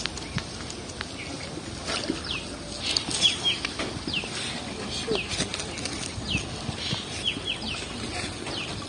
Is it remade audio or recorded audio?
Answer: recorded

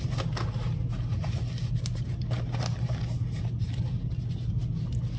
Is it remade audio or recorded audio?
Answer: recorded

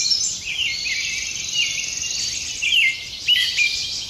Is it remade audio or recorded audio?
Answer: recorded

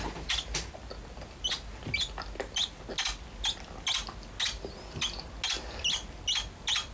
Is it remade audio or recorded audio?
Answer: recorded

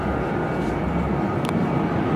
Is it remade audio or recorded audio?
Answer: recorded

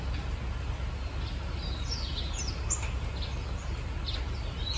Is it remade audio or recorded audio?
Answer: recorded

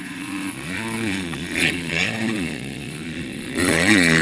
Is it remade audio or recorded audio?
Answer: remade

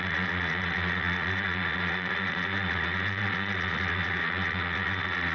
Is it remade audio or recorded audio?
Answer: remade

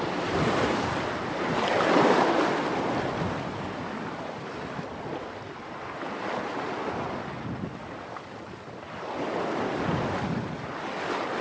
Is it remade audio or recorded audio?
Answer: recorded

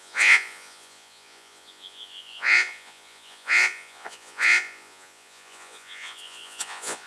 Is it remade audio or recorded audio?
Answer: remade